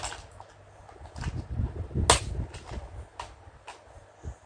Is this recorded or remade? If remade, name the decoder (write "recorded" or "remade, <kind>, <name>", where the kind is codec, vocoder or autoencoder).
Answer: recorded